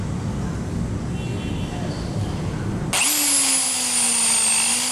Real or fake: real